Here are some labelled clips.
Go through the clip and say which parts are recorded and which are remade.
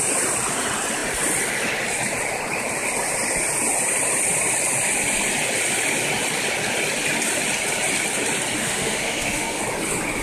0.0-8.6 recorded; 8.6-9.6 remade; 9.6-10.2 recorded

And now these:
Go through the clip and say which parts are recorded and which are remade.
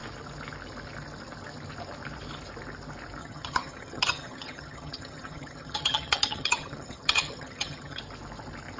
0.0-3.2 recorded; 3.2-8.0 remade; 8.0-8.8 recorded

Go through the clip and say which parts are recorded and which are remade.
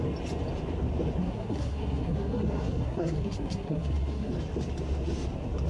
0.0-1.2 recorded; 1.2-4.3 remade; 4.3-5.7 recorded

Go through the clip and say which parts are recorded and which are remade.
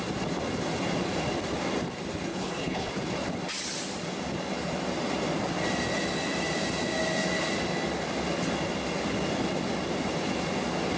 0.0-2.3 recorded; 2.3-2.9 remade; 2.9-11.0 recorded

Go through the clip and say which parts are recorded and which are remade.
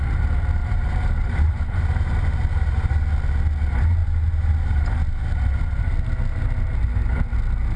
0.0-0.6 recorded; 0.6-2.9 remade; 2.9-4.0 recorded; 4.0-5.8 remade; 5.8-7.8 recorded